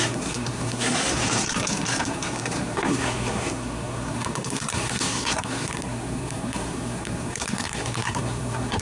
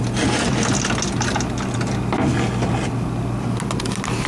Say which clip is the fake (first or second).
first